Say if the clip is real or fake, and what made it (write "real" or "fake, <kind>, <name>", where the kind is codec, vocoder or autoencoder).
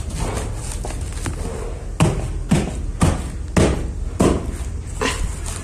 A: real